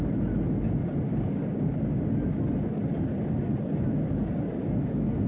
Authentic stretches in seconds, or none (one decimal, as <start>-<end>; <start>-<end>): 0.0-1.1; 2.0-5.3